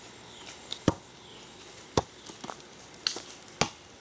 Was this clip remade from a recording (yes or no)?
no